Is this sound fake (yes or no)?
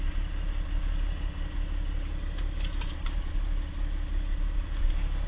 no